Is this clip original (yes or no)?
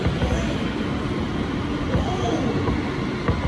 yes